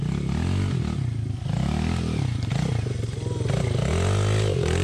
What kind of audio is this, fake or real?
real